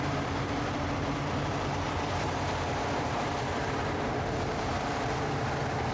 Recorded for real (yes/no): no